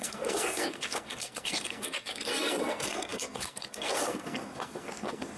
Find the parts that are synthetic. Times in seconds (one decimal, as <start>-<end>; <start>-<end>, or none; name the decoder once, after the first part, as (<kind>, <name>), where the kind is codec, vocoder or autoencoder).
0.0-5.4 (codec, SNAC)